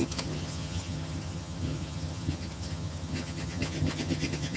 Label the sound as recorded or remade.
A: remade